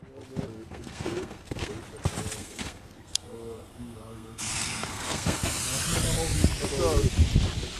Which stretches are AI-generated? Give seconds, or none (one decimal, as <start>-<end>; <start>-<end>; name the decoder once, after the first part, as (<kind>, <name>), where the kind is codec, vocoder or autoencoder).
0.5-1.7 (codec, SNAC); 2.4-5.6